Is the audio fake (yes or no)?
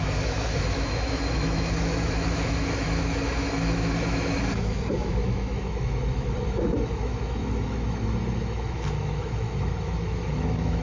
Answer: yes